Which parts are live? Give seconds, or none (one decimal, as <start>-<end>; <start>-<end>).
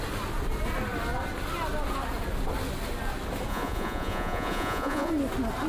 0.0-3.5; 5.1-5.7